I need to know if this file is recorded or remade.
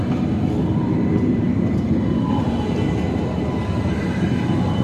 recorded